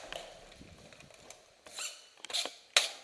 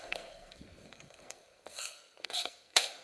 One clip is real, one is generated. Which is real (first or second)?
first